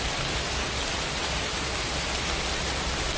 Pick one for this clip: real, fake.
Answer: real